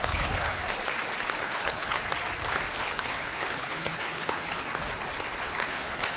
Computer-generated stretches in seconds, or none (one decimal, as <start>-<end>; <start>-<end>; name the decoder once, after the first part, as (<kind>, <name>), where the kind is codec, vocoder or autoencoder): 0.0-0.6 (codec, HILCodec); 1.4-2.0; 2.8-4.7; 5.4-6.2